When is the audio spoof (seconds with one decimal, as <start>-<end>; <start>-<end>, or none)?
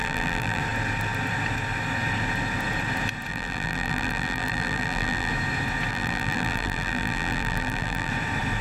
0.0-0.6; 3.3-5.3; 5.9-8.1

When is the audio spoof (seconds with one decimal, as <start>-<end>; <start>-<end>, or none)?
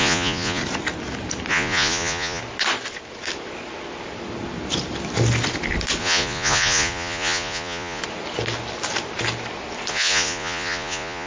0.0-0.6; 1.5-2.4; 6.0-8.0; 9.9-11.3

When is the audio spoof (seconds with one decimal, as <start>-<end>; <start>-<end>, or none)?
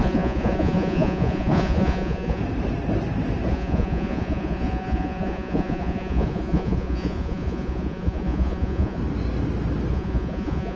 0.0-2.4; 3.5-9.0; 9.9-10.8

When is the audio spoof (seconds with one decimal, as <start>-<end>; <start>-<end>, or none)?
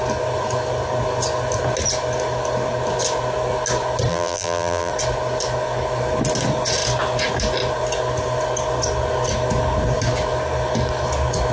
4.1-4.9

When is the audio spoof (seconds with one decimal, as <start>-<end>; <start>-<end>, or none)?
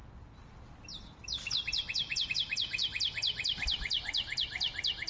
none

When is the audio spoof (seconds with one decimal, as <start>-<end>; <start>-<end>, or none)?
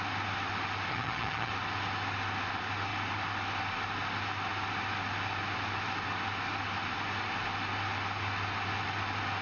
0.9-1.5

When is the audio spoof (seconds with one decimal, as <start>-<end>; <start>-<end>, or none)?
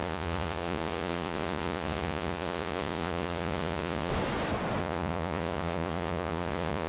0.0-4.1; 4.8-6.9